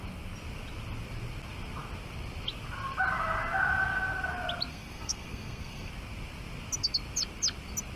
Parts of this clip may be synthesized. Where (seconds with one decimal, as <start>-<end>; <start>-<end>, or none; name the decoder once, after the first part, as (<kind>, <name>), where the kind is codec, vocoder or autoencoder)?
4.7-5.9 (codec, SNAC)